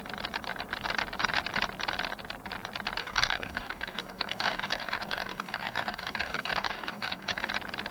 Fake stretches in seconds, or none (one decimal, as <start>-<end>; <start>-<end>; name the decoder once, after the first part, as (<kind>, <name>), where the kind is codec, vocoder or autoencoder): 3.0-7.5 (codec, DAC)